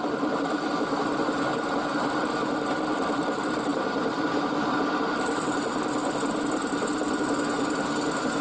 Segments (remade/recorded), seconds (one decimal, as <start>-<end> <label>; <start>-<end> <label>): 0.0-8.4 recorded